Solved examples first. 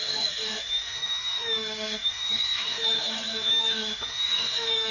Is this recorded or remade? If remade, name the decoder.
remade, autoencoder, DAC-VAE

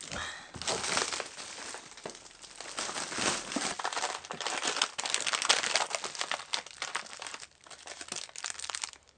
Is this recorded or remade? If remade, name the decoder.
recorded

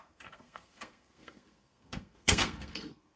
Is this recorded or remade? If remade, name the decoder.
remade, codec, SNAC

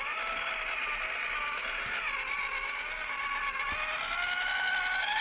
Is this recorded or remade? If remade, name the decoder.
recorded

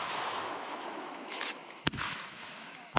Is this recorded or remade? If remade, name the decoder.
remade, autoencoder, DAC-VAE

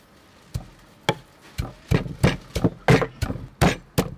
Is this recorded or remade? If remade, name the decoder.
recorded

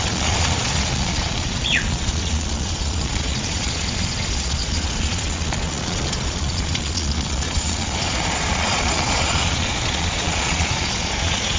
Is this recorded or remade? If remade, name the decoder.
remade, vocoder, Vocos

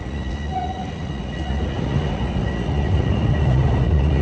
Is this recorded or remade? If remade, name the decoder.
remade, vocoder, Vocos